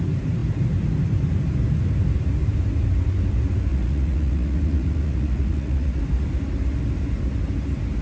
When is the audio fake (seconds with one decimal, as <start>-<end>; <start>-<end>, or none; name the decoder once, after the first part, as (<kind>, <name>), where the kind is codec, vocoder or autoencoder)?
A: 3.7-6.0 (vocoder, Vocos)